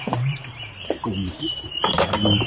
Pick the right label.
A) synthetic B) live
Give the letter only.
A